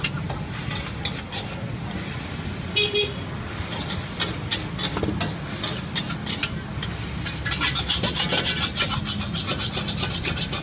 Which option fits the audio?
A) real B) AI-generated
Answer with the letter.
A